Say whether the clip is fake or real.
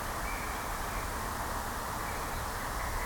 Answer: real